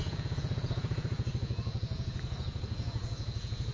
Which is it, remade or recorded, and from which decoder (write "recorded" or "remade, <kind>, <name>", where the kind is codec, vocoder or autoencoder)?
remade, vocoder, Vocos